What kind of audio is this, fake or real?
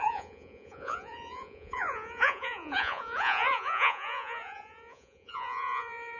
fake